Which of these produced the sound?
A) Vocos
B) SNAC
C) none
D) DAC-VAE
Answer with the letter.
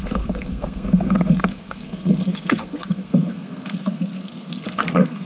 B